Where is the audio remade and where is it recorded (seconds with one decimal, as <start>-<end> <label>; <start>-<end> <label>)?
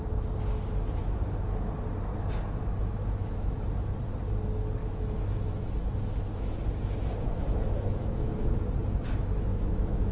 0.0-1.0 recorded; 1.0-1.7 remade; 1.7-2.1 recorded; 2.1-3.7 remade; 3.7-4.8 recorded; 4.8-8.6 remade; 8.6-9.5 recorded; 9.5-10.1 remade